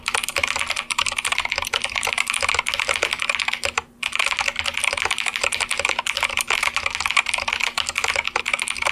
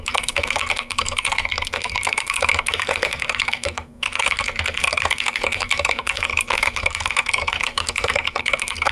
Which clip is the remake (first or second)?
second